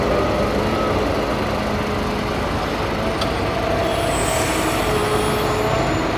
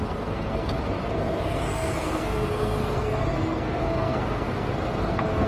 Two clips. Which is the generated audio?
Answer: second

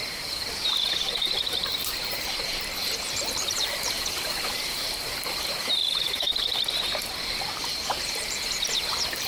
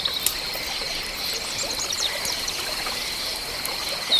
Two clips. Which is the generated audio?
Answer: first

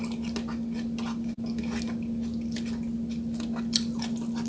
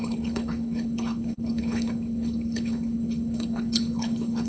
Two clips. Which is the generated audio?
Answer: second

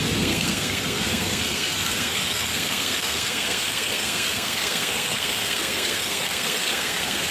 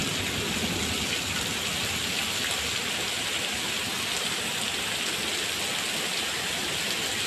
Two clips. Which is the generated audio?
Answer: first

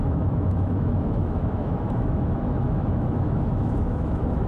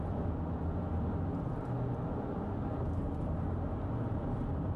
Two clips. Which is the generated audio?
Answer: first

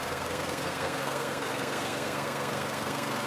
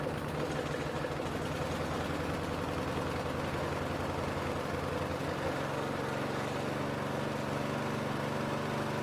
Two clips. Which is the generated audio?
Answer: first